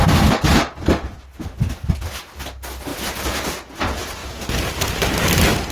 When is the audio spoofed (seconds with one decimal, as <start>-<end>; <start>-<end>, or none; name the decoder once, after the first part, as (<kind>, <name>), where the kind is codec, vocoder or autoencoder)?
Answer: none

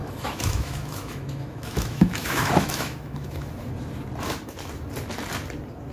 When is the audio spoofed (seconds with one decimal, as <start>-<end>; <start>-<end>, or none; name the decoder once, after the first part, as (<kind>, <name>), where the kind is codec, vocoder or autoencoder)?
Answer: 0.0-3.5 (autoencoder, DAC-VAE)

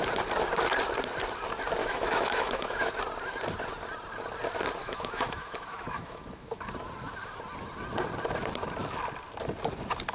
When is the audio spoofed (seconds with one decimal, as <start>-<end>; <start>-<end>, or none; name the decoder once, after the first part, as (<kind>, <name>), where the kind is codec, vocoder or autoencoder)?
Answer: 1.8-2.9 (autoencoder, DAC-VAE); 4.8-6.6

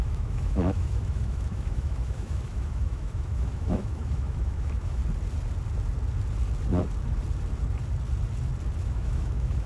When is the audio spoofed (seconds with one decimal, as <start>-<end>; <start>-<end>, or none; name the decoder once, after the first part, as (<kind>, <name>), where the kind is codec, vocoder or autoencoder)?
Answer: 0.0-5.0 (autoencoder, DAC-VAE); 8.8-9.7

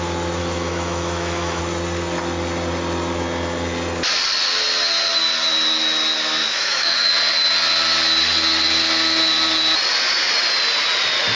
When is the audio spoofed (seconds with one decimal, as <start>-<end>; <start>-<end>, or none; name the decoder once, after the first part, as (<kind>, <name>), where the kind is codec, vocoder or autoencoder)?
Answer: 0.4-1.6 (autoencoder, DAC-VAE); 6.4-7.1

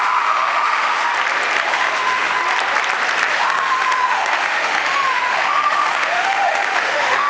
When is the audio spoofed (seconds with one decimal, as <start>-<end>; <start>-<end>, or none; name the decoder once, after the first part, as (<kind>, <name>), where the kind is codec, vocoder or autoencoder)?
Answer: 0.0-1.1 (autoencoder, DAC-VAE); 1.7-2.4; 3.3-7.3

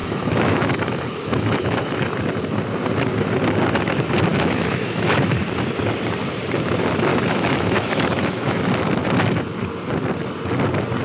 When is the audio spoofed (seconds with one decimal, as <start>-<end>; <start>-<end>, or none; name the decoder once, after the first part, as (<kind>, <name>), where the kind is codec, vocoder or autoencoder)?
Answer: 0.0-2.1 (autoencoder, DAC-VAE); 4.3-5.4; 7.1-8.6

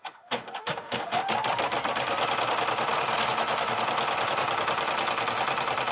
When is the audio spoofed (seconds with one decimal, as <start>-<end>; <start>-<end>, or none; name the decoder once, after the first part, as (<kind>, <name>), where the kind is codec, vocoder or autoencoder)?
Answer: 0.0-1.2 (autoencoder, DAC-VAE)